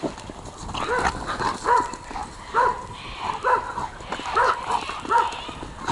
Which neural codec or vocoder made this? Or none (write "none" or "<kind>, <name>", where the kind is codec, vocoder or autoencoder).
none